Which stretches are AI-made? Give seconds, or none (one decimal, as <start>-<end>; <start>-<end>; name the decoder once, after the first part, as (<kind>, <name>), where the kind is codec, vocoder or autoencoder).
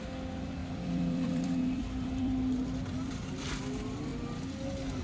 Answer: 0.6-3.6 (vocoder, BigVGAN v2)